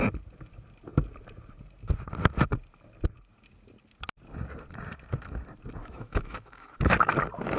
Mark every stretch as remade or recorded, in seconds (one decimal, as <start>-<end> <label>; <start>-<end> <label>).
0.0-5.8 recorded; 5.8-7.1 remade; 7.1-7.6 recorded